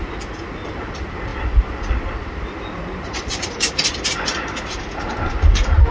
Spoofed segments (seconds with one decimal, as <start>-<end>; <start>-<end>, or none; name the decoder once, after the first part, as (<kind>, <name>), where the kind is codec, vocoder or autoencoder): none